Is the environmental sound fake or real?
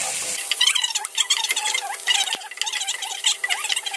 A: real